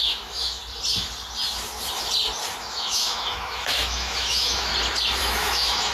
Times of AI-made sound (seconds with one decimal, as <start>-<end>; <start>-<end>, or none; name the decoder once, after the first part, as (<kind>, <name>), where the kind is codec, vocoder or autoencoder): 0.0-0.6 (autoencoder, DAC-VAE); 2.6-4.7; 5.2-5.9